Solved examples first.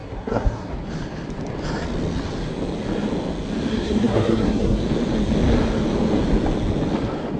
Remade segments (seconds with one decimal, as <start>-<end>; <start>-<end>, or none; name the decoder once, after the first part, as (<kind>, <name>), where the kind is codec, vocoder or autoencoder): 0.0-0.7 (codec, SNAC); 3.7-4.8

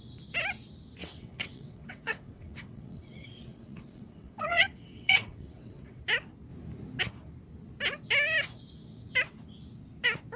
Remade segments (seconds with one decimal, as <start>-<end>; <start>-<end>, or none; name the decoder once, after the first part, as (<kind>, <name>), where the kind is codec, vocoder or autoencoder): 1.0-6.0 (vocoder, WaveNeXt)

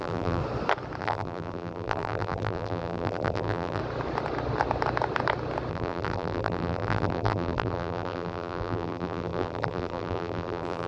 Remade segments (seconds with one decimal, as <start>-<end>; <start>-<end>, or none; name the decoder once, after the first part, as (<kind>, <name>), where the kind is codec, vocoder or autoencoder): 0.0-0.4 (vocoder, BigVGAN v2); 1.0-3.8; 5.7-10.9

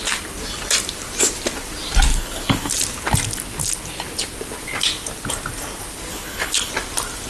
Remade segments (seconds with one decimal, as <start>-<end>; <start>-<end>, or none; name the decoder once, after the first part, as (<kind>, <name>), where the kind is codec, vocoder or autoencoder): 2.1-2.7 (codec, HILCodec); 6.1-6.7

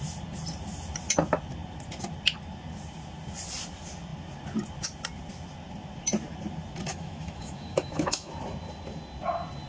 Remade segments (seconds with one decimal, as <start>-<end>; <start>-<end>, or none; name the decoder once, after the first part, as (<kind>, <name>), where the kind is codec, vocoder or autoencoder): 6.9-8.3 (autoencoder, DAC-VAE)

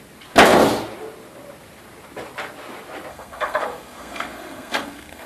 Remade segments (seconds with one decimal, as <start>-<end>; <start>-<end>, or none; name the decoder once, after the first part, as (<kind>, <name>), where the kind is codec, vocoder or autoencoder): 3.1-5.3 (codec, SNAC)